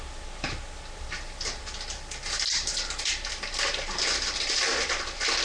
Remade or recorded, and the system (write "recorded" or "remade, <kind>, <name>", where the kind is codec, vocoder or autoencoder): recorded